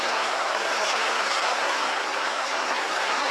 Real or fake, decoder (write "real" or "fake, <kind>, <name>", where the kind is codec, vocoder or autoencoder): fake, codec, SNAC